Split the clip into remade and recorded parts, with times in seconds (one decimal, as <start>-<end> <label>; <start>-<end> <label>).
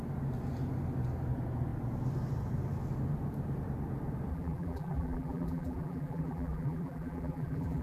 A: 0.0-4.3 recorded; 4.3-7.8 remade